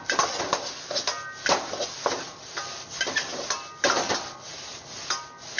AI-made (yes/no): no